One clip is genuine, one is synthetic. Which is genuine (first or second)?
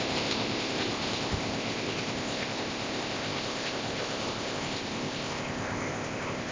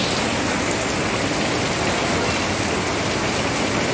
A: second